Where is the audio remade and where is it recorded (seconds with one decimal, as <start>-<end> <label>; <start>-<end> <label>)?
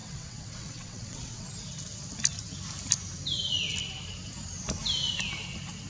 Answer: 0.0-1.5 remade; 1.5-5.9 recorded